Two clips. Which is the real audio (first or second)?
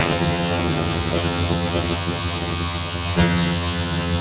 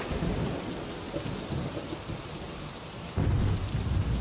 second